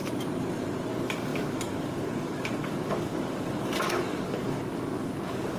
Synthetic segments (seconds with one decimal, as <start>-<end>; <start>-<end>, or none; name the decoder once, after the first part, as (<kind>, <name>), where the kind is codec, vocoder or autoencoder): 0.9-5.6 (codec, DAC)